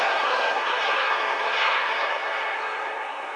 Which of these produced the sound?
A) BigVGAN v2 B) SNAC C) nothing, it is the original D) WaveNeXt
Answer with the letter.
B